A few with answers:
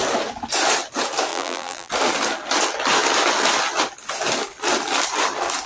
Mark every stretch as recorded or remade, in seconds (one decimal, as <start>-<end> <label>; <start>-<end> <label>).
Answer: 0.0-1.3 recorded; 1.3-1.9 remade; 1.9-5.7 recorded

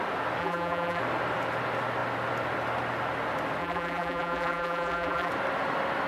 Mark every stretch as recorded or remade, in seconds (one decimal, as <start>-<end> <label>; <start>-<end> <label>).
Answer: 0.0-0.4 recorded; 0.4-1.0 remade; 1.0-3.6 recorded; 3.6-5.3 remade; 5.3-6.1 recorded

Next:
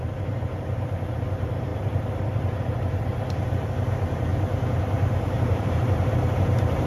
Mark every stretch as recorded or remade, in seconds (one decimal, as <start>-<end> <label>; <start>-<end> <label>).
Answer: 0.0-4.3 remade; 4.3-5.4 recorded; 5.4-6.9 remade

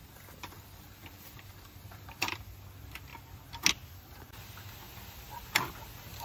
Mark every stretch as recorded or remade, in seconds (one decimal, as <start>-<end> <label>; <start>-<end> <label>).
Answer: 0.0-2.4 remade; 2.4-6.2 recorded

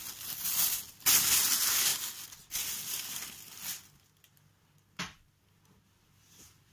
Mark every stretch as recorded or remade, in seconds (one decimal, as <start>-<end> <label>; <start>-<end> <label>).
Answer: 0.0-6.7 recorded